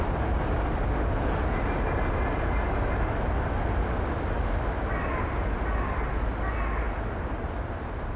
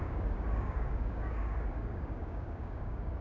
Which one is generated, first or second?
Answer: second